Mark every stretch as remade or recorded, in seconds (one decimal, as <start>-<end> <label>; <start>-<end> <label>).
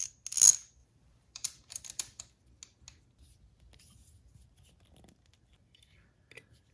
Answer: 0.0-0.8 recorded; 0.8-2.3 remade; 2.3-6.7 recorded